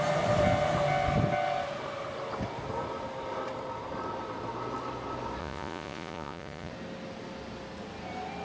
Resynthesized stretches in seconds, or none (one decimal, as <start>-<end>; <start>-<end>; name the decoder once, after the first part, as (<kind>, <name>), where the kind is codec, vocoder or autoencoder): 5.4-6.7 (vocoder, Vocos)